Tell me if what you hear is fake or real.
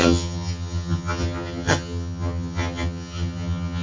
fake